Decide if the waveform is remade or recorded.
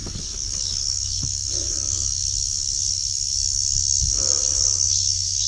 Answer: remade